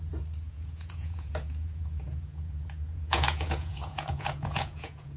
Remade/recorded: remade